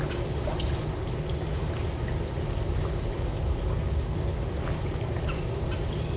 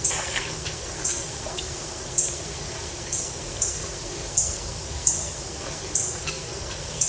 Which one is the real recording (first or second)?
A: first